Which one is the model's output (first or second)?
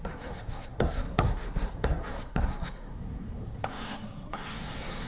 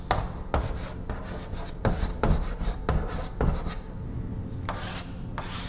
first